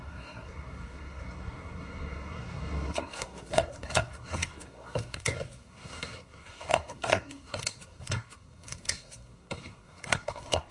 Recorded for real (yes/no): no